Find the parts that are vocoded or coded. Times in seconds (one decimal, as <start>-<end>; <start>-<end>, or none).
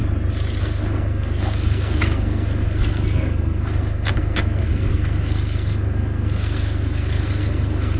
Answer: 0.6-8.0